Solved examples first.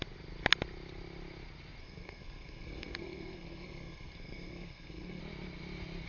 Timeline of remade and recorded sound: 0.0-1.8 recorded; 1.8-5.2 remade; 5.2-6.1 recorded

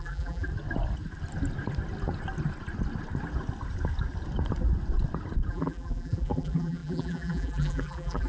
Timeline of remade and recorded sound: 0.0-0.5 remade; 0.5-5.5 recorded; 5.5-8.3 remade

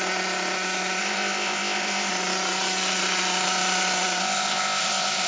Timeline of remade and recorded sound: 0.0-1.0 recorded; 1.0-2.1 remade; 2.1-4.2 recorded; 4.2-5.3 remade

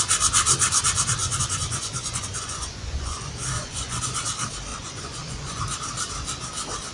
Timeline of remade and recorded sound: 0.0-1.2 recorded; 1.2-4.2 remade; 4.2-4.7 recorded; 4.7-5.6 remade; 5.6-6.9 recorded

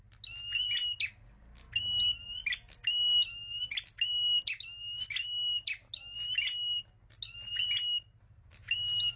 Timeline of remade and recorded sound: 0.0-9.2 recorded

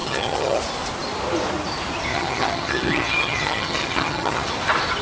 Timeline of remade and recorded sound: 0.0-0.6 remade; 0.6-2.1 recorded; 2.1-4.5 remade; 4.5-5.0 recorded